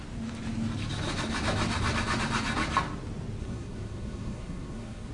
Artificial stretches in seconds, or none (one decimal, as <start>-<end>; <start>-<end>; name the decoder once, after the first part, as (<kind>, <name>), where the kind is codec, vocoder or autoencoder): 3.4-5.1 (codec, SNAC)